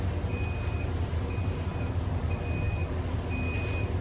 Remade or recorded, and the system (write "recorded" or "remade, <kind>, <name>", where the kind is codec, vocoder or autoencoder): recorded